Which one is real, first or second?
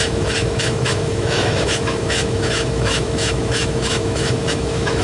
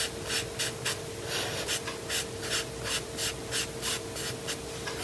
second